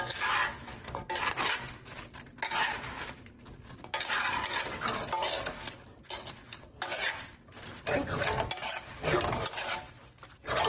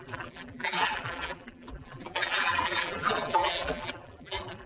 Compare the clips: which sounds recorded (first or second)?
first